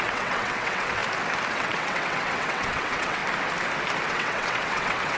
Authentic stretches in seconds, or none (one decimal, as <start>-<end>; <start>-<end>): 1.0-1.5; 3.2-4.1